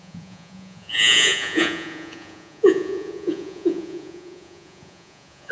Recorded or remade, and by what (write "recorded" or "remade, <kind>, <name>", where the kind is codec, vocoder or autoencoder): remade, vocoder, Vocos